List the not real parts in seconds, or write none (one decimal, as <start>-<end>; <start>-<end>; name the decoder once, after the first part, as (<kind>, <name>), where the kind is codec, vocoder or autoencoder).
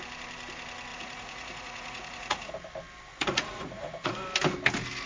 0.9-2.5 (vocoder, Vocos); 3.1-4.2